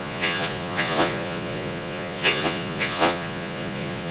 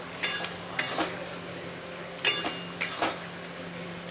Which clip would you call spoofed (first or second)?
first